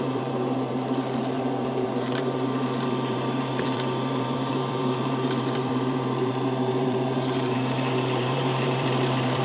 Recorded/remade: remade